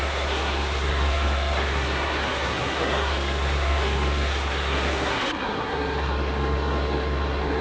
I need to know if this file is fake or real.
fake